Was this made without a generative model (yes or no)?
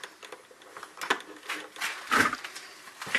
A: yes